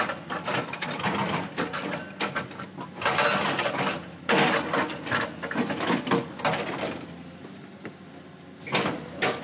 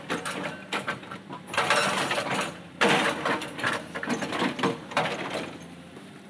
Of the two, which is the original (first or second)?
first